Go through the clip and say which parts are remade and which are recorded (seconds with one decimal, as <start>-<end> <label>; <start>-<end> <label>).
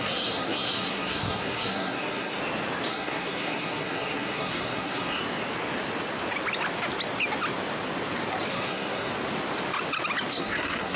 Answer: 0.0-2.4 remade; 2.4-2.9 recorded; 2.9-5.2 remade; 5.2-8.5 recorded; 8.5-9.1 remade; 9.1-10.3 recorded; 10.3-11.0 remade